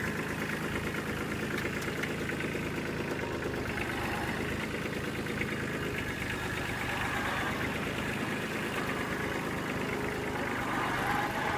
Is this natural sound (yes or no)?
yes